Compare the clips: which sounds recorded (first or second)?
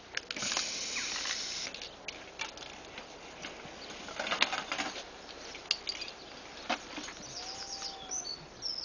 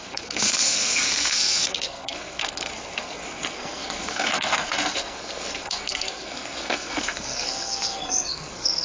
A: first